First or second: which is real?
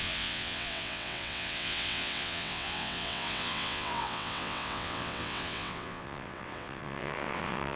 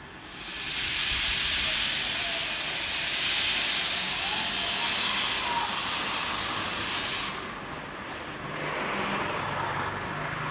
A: second